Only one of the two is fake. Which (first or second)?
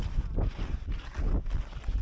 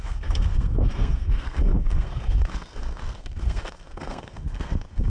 second